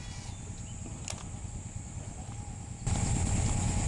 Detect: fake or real real